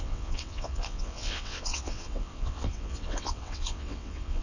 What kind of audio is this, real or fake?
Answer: fake